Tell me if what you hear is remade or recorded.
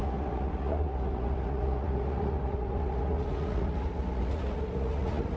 remade